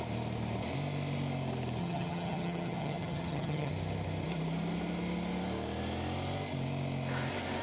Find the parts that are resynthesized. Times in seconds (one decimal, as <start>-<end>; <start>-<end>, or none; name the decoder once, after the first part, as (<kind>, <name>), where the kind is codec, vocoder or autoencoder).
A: 1.8-3.7 (vocoder, HiFi-GAN)